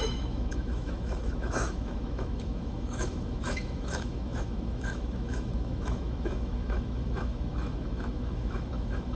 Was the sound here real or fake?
fake